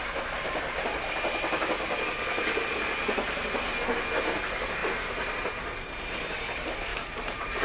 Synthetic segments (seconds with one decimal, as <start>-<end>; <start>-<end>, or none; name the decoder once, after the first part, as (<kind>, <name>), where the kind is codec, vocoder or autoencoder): 4.8-5.9 (vocoder, BigVGAN v2); 6.9-7.6